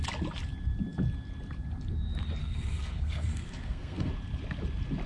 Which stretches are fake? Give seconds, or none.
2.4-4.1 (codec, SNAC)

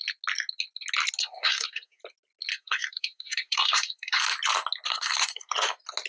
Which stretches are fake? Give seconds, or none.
1.2-2.0 (codec, SNAC); 2.5-4.2; 4.9-5.5

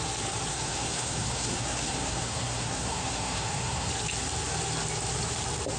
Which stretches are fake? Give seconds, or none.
0.5-3.9 (codec, SNAC)